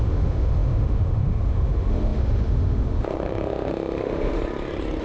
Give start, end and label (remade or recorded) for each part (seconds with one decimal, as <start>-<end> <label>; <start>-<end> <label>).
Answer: 0.0-4.4 remade; 4.4-5.0 recorded